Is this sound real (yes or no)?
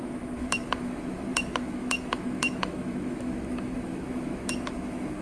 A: no